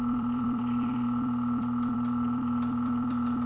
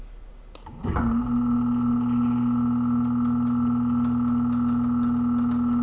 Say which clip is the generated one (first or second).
first